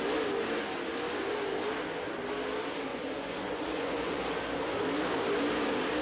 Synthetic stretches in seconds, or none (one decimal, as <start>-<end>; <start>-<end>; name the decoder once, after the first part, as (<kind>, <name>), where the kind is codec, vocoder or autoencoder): 2.9-4.2 (vocoder, Vocos)